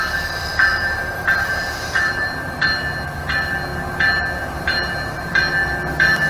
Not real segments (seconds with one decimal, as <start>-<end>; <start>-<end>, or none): 0.7-2.5